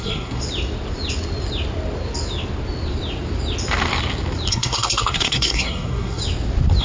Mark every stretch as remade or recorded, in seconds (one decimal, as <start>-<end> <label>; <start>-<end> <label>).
0.0-0.4 remade; 0.4-4.5 recorded; 4.5-6.2 remade; 6.2-6.8 recorded